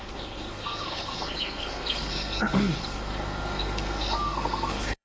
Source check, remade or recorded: remade